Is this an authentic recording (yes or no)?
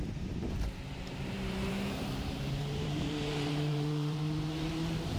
no